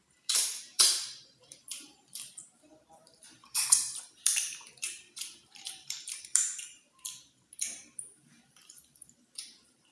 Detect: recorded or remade remade